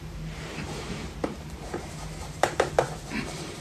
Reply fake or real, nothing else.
fake